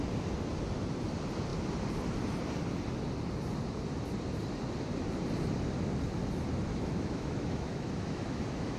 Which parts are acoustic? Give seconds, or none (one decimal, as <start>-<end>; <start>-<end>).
0.0-6.7